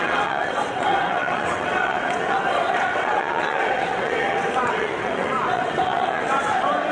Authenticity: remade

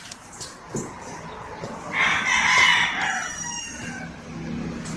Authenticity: recorded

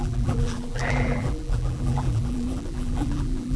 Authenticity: remade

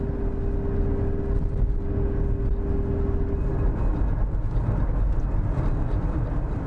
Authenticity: recorded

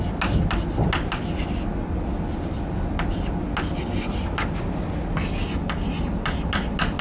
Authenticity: recorded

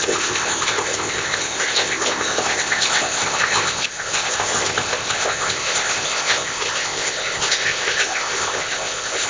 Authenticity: remade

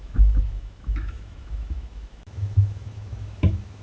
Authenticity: remade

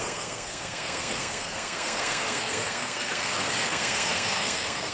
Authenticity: remade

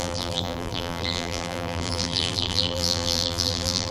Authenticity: remade